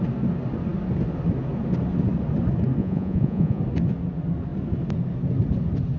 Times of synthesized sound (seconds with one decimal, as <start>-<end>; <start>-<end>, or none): 2.8-3.6